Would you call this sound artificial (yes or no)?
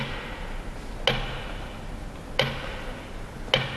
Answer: no